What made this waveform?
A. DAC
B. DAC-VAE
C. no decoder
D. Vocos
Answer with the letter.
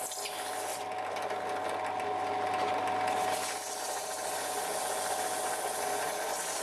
C